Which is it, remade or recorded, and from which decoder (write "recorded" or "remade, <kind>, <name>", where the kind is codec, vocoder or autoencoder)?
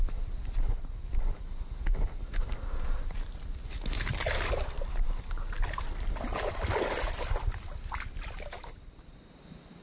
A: recorded